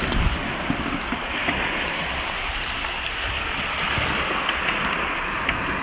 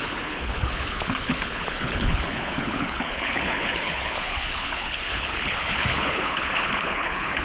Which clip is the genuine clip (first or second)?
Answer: first